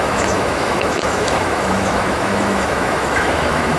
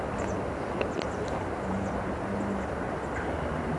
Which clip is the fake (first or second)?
first